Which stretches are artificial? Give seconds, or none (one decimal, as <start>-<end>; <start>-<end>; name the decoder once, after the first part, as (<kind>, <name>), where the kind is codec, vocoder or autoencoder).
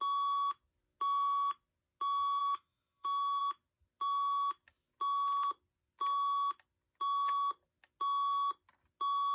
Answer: 2.4-3.4 (autoencoder, DAC-VAE)